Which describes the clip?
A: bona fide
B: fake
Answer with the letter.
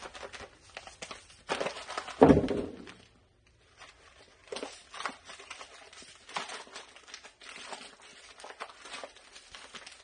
A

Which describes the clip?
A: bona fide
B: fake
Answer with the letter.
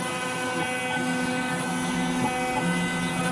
A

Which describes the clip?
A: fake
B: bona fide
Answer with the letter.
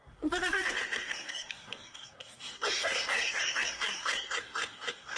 A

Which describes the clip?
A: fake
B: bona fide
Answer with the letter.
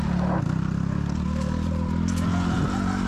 B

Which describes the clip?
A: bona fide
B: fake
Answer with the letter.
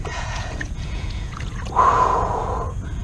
B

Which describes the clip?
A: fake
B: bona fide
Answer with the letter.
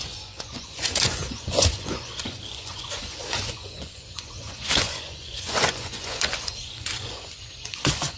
A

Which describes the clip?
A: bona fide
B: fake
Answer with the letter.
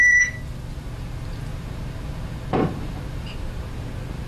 B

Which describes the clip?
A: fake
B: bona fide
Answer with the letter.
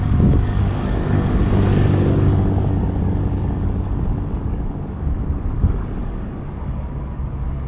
A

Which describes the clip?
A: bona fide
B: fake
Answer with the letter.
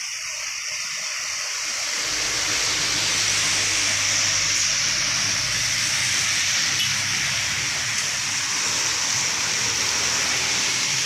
A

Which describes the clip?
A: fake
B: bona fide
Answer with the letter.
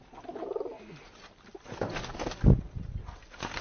B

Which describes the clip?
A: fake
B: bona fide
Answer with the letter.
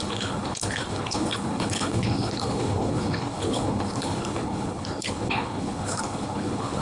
A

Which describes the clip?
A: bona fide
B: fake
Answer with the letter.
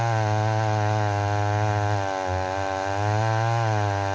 A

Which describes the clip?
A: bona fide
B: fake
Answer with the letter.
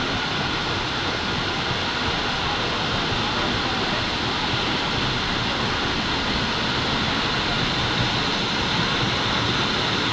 A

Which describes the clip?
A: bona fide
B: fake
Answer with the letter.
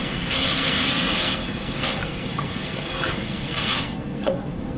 B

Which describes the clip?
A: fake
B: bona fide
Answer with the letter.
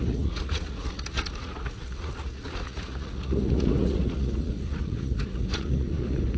A